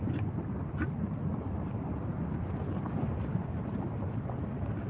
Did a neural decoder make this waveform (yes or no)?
no